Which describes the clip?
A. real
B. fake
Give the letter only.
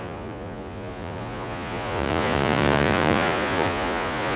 B